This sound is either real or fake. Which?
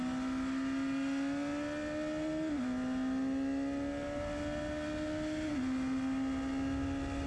real